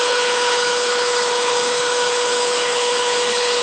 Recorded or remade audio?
remade